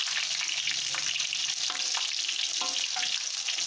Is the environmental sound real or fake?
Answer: real